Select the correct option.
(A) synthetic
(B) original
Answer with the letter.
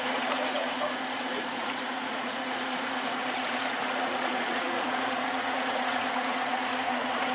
A